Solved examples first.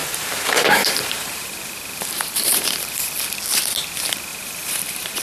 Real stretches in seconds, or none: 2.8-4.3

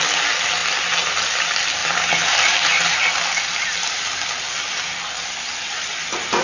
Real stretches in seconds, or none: 0.0-1.8; 3.0-6.4

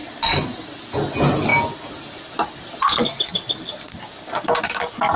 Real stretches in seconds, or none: 0.6-5.2

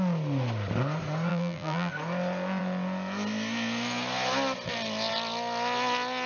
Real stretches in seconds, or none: 0.0-1.3; 1.9-6.3

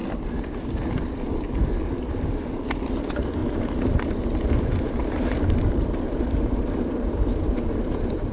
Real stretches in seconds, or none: 0.0-3.4